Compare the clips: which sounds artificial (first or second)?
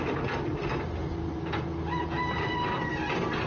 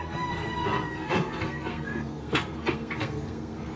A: second